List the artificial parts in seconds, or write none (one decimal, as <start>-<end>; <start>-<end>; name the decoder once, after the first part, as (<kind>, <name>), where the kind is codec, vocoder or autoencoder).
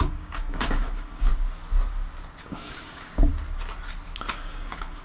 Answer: 0.0-1.3 (codec, DAC); 2.4-3.3; 4.3-5.0